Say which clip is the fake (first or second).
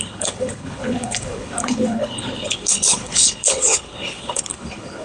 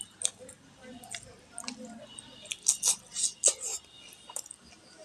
first